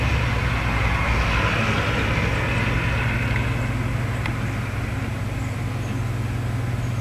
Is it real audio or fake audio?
real